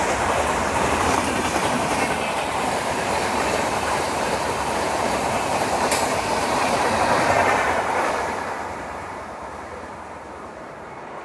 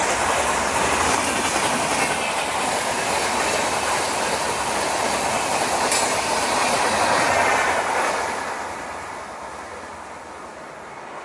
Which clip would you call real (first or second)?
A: second